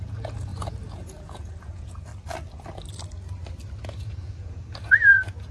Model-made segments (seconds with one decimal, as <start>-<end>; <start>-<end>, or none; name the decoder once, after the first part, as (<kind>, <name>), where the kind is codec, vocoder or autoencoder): 0.0-2.1 (vocoder, Vocos); 4.0-5.5